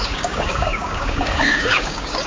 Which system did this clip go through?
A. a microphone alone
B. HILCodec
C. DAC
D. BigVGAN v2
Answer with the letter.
C